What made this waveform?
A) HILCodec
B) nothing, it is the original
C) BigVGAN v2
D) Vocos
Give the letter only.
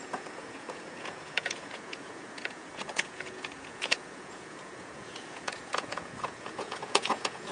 D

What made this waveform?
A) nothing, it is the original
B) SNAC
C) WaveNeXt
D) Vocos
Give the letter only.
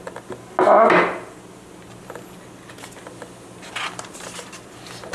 A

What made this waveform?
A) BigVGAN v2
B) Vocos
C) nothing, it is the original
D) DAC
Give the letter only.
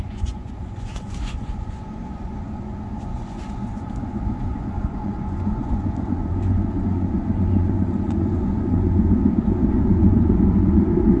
B